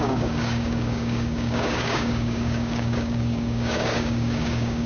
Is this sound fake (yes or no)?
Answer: yes